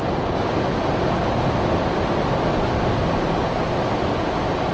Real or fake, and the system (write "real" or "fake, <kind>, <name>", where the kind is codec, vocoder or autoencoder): real